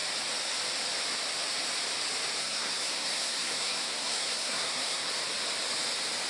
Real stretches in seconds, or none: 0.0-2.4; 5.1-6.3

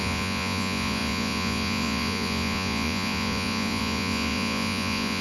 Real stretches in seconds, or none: none

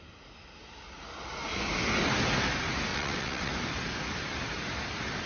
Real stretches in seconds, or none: 0.0-2.9; 3.5-5.3

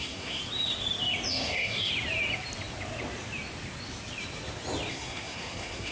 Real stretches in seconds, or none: 0.4-1.3; 1.9-4.9